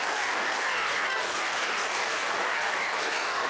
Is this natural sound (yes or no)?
no